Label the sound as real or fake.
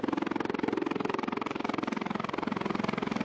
fake